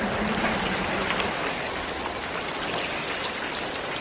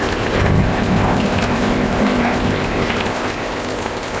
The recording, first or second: first